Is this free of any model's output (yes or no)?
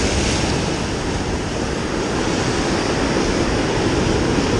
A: yes